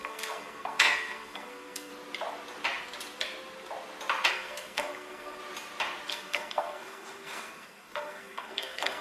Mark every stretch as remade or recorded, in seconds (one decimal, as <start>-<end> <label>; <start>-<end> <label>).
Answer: 0.0-1.9 remade; 1.9-4.3 recorded; 4.3-5.4 remade; 5.4-6.1 recorded; 6.1-9.0 remade